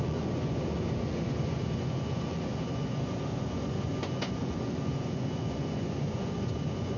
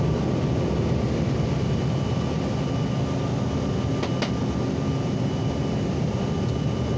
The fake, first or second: first